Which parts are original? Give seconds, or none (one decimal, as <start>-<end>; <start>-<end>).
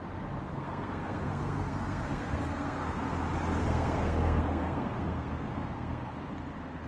0.0-0.4; 3.0-3.6; 6.3-6.9